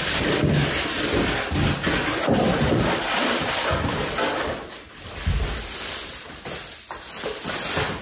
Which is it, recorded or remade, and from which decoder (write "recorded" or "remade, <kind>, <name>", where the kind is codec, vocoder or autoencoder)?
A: recorded